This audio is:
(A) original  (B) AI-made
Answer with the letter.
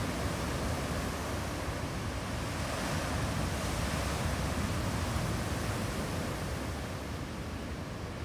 A